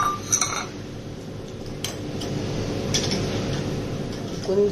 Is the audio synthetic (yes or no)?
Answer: no